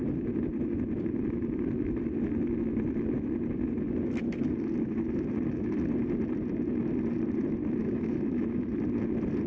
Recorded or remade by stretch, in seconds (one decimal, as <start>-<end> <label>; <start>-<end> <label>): 0.0-7.8 recorded; 7.8-8.6 remade; 8.6-9.5 recorded